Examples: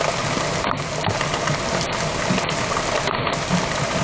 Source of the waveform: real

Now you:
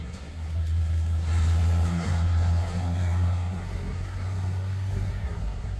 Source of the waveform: fake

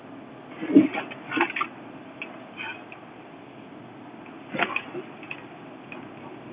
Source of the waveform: real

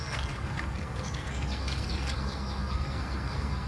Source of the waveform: fake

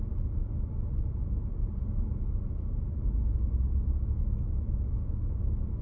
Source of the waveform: real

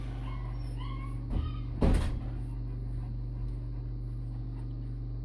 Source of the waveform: real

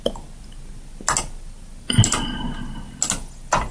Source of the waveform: real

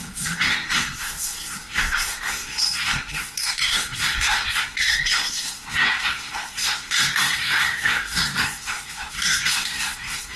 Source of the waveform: fake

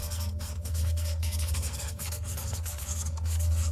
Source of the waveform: fake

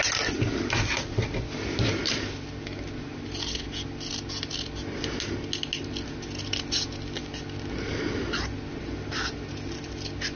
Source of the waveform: real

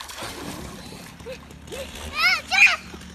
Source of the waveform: real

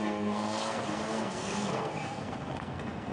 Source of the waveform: fake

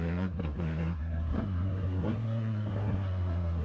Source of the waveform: fake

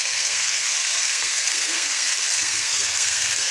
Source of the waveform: fake